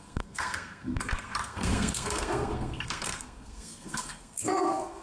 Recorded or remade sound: remade